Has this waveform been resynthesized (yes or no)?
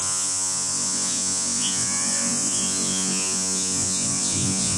yes